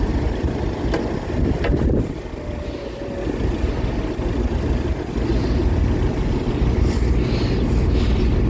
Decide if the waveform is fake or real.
real